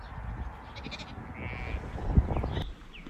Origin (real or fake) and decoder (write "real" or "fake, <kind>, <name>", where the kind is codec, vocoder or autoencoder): real